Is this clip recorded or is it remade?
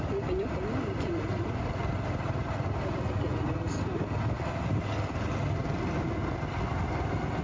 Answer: recorded